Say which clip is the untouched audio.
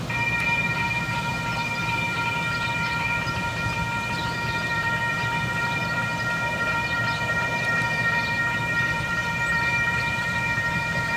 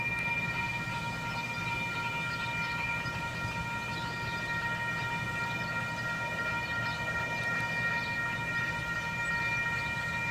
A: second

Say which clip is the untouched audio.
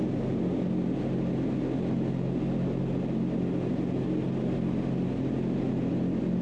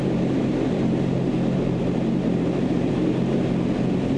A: first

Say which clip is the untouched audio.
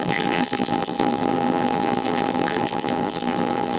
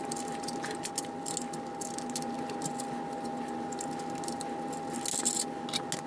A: second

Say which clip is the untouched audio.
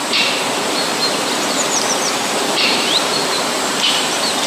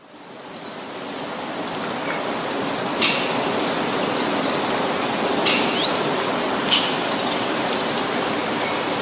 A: second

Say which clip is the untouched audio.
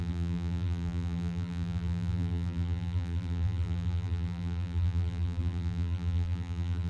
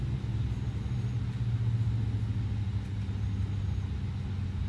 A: second